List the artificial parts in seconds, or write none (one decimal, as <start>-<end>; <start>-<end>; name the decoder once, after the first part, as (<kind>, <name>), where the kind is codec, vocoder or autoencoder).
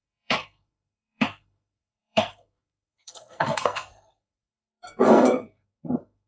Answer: 0.0-6.3 (codec, SNAC)